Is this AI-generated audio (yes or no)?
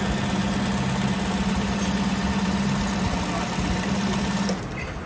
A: no